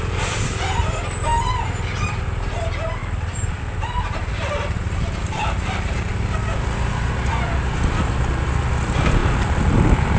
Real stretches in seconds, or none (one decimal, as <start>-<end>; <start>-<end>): 0.0-3.0; 3.6-4.2; 6.1-9.2